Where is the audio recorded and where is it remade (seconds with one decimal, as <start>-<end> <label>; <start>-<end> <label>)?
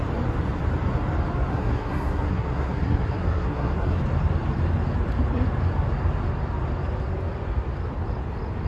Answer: 0.0-1.5 recorded; 1.5-4.0 remade; 4.0-8.7 recorded